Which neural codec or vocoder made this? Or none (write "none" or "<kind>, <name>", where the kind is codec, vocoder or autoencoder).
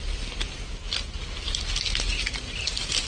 none